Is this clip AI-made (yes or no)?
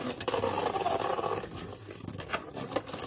no